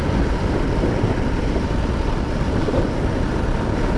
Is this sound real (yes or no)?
yes